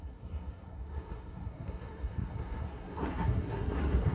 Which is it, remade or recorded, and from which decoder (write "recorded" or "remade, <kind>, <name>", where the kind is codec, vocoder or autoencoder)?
remade, codec, SNAC